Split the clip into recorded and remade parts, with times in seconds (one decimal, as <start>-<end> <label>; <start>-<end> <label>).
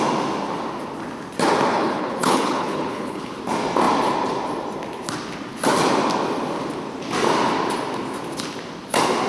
0.0-1.7 recorded; 1.7-3.3 remade; 3.3-9.3 recorded